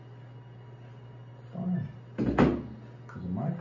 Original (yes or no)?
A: yes